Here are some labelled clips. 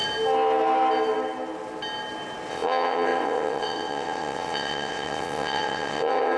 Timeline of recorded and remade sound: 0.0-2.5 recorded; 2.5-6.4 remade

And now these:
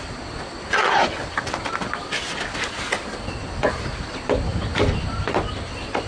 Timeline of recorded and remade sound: 0.0-6.1 recorded

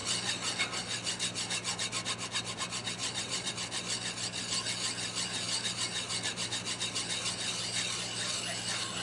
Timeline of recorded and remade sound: 0.0-3.0 recorded; 3.0-3.5 remade; 3.5-9.0 recorded

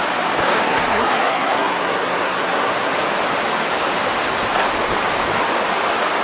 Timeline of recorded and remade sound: 0.0-0.6 recorded; 0.6-2.9 remade; 2.9-6.2 recorded

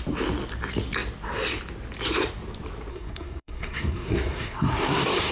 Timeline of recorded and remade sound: 0.0-2.9 recorded; 2.9-5.3 remade

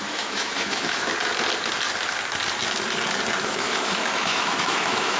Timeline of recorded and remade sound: 0.0-1.1 remade; 1.1-3.4 recorded; 3.4-5.2 remade

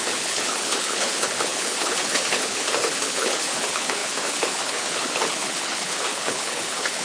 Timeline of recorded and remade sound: 0.0-7.0 remade

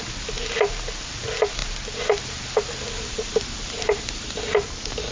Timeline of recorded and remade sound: 0.0-5.1 recorded